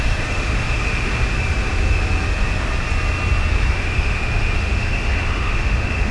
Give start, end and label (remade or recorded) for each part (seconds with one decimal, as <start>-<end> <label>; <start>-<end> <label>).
0.0-1.1 remade; 1.1-3.8 recorded; 3.8-6.1 remade